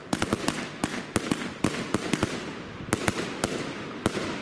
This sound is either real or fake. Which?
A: real